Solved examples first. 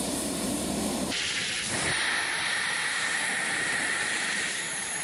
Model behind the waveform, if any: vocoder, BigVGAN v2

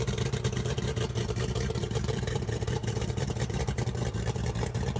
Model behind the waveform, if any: vocoder, BigVGAN v2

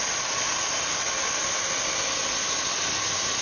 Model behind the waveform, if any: none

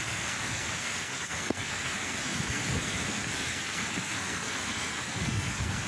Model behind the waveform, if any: codec, SNAC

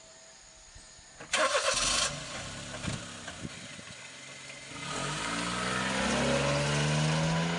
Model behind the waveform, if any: none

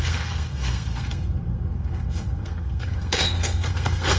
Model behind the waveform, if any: codec, SNAC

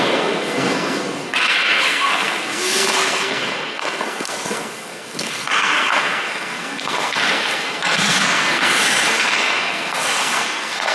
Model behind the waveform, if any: codec, SNAC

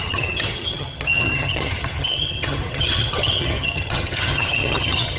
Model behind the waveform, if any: vocoder, HiFi-GAN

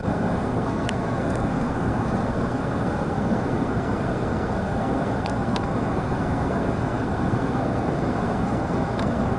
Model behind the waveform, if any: codec, SNAC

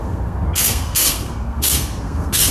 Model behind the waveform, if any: codec, SNAC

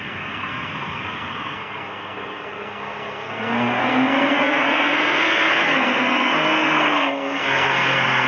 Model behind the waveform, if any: codec, SNAC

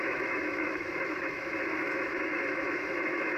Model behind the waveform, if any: autoencoder, DAC-VAE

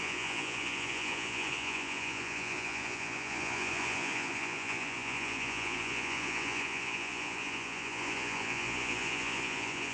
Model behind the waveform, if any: vocoder, Vocos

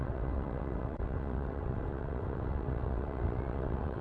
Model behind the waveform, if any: vocoder, WaveNeXt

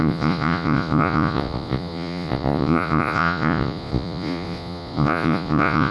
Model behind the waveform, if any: vocoder, Vocos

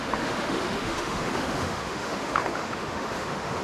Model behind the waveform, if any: autoencoder, DAC-VAE